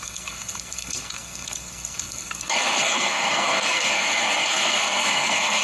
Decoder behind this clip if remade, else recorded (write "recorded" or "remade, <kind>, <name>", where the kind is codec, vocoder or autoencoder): remade, codec, SNAC